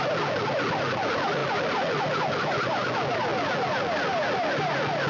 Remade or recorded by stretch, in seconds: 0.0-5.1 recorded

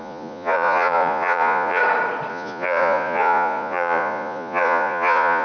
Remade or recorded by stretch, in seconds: 0.0-1.8 remade; 1.8-2.3 recorded; 2.3-5.4 remade

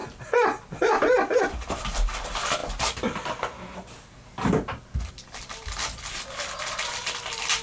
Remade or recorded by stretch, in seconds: 0.0-0.8 recorded; 0.8-2.6 remade; 2.6-5.1 recorded; 5.1-7.6 remade

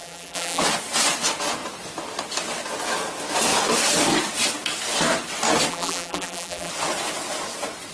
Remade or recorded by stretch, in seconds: 0.0-0.6 remade; 0.6-5.7 recorded; 5.7-6.7 remade; 6.7-7.9 recorded

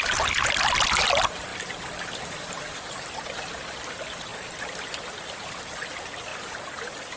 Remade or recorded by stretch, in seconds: 0.0-7.2 remade

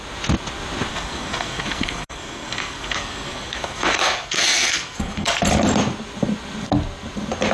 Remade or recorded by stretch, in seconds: 0.0-0.9 recorded; 0.9-5.4 remade; 5.4-7.5 recorded